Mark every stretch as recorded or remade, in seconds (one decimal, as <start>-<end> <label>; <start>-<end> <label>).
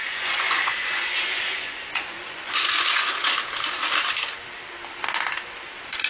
0.0-3.4 remade; 3.4-6.1 recorded